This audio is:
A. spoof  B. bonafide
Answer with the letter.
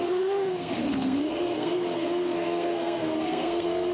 A